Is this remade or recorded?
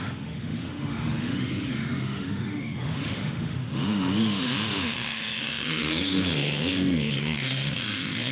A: remade